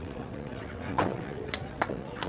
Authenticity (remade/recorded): remade